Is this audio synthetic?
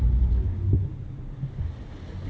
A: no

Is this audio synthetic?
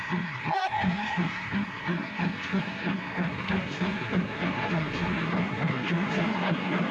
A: yes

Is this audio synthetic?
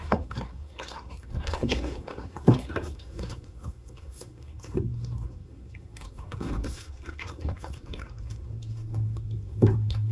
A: yes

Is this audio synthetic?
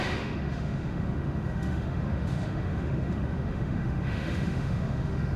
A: yes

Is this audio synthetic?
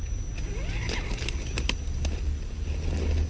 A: no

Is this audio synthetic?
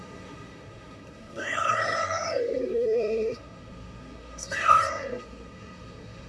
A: yes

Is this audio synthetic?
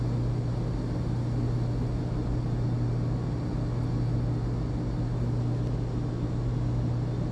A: no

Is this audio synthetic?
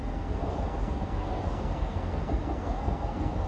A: yes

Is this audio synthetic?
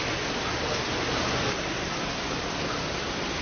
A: no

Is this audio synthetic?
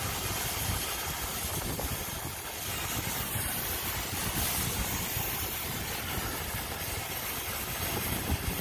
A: no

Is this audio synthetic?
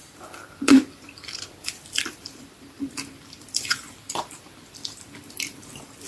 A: yes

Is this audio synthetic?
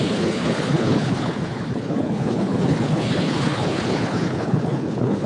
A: yes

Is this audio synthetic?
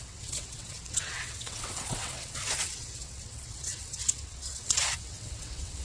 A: yes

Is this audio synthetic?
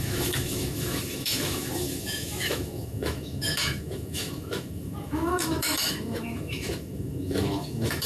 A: yes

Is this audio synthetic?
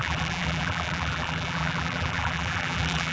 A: yes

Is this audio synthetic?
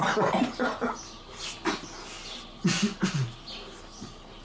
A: no